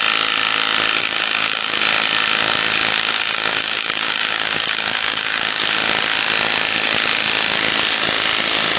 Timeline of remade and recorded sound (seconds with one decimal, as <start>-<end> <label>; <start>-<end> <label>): 0.0-1.0 recorded; 1.0-1.8 remade; 1.8-3.0 recorded; 3.0-5.6 remade; 5.6-8.8 recorded

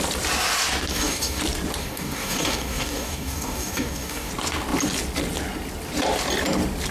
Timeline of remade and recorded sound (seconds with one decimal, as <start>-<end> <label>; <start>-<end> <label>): 0.0-0.9 recorded; 0.9-1.4 remade; 1.4-1.8 recorded; 1.8-4.3 remade; 4.3-6.9 recorded

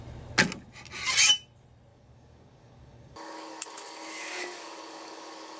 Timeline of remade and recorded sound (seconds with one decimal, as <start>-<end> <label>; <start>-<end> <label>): 0.0-1.9 recorded; 1.9-5.6 remade

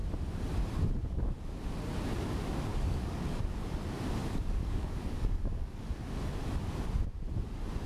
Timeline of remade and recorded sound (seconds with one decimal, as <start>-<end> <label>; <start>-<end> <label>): 0.0-2.7 recorded; 2.7-3.4 remade; 3.4-4.2 recorded; 4.2-6.2 remade; 6.2-7.9 recorded